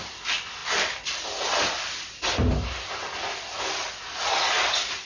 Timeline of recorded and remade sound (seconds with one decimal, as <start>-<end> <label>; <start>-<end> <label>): 0.0-5.0 recorded